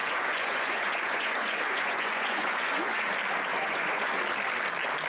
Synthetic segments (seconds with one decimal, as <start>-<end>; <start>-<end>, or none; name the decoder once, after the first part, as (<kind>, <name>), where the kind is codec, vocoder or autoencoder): 0.0-3.1 (vocoder, Vocos); 3.5-4.2